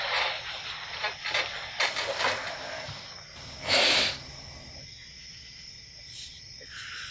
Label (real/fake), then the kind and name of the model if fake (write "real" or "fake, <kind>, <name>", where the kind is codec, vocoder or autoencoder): real